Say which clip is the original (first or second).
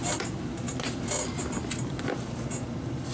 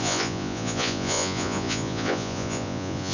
first